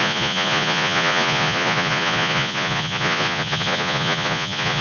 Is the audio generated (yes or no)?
yes